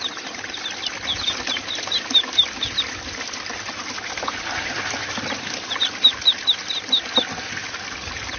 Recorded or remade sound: recorded